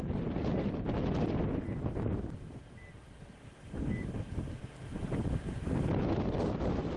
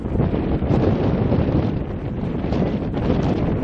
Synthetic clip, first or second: second